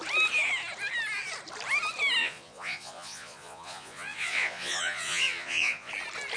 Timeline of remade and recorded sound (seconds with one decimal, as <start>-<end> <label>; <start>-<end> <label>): 0.0-2.2 recorded; 2.2-5.9 remade; 5.9-6.4 recorded

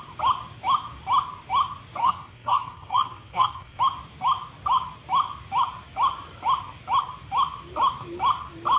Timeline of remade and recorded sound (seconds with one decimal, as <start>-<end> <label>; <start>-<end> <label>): 0.0-2.0 recorded; 2.0-3.8 remade; 3.8-8.8 recorded